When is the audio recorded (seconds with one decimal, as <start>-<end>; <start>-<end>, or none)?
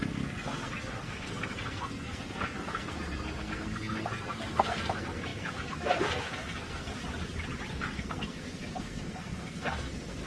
7.0-7.7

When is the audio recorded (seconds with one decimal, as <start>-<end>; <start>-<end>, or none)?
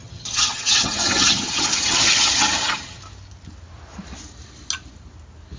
3.0-5.6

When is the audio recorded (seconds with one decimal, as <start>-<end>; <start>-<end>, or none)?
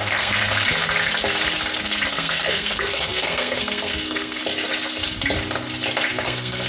0.4-2.1; 4.4-6.1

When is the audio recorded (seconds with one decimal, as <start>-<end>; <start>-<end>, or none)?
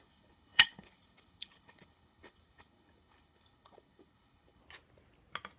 4.6-5.6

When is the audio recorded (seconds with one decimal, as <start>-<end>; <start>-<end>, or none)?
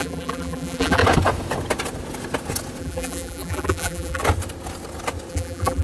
1.0-2.8; 4.2-5.3